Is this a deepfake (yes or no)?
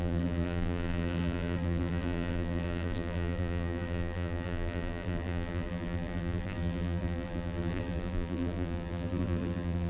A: yes